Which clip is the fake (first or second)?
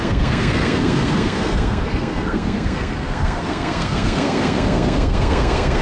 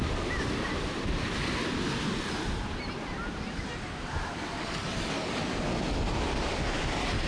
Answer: first